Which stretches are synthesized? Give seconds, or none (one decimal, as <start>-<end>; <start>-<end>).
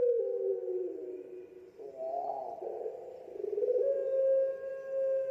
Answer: none